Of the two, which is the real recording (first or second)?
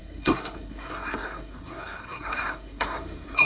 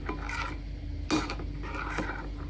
second